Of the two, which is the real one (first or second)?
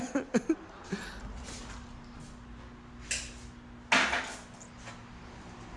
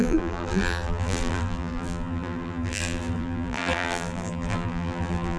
first